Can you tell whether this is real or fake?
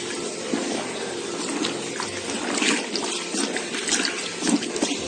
real